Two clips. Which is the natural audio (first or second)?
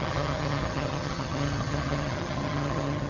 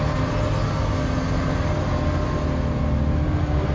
second